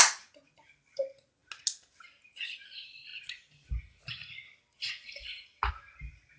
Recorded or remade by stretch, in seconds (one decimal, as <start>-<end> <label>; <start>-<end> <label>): 0.0-6.4 recorded